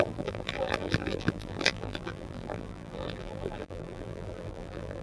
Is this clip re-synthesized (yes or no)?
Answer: yes